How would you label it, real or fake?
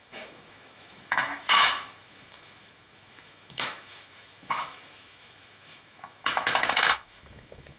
fake